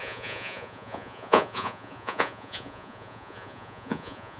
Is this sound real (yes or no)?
no